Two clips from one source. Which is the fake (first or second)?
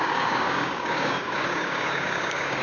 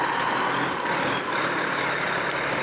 first